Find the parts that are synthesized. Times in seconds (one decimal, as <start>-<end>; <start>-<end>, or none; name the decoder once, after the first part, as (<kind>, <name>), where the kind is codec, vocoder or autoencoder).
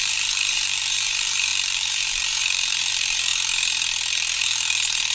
0.0-3.3 (vocoder, BigVGAN v2); 4.1-5.1